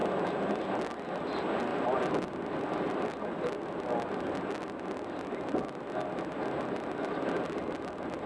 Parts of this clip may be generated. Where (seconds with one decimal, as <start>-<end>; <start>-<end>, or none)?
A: none